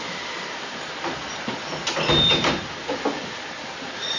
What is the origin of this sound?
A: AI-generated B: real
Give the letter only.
B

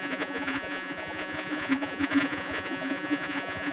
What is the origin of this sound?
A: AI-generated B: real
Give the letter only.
A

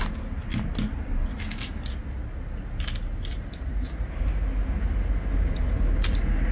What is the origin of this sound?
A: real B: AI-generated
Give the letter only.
A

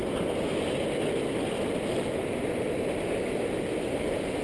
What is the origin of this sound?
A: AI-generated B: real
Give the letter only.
B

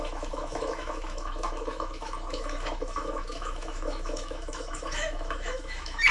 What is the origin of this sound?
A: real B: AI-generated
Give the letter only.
B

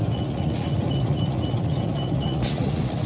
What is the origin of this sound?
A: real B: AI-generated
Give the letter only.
B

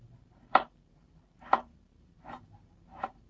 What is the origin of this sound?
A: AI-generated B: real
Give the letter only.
A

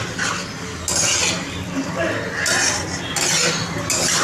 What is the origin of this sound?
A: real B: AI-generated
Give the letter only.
A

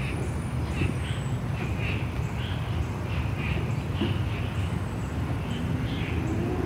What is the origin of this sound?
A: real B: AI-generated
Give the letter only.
A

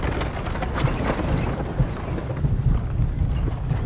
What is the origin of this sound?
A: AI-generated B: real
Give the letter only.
B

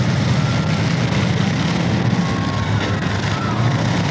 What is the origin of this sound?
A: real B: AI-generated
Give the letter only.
A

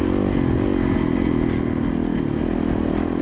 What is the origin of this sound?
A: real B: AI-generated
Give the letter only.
A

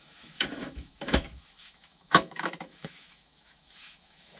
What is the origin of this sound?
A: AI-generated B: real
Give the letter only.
A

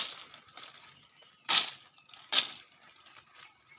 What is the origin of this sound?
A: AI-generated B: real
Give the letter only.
B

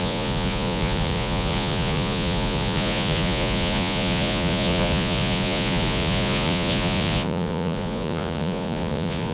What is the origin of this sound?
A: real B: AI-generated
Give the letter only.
B